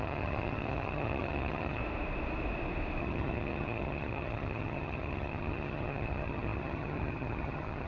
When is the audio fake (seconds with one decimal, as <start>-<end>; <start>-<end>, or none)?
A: 0.0-1.8; 3.0-7.9